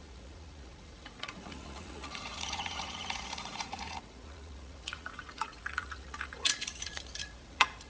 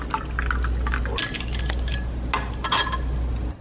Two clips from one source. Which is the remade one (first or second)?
first